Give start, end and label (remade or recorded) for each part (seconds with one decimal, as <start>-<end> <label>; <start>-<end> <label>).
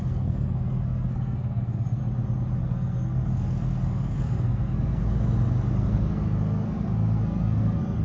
0.0-2.0 remade; 2.0-2.6 recorded; 2.6-5.0 remade; 5.0-5.7 recorded; 5.7-8.0 remade